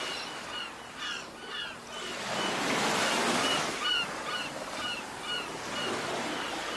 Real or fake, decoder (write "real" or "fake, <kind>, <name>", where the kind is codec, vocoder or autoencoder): real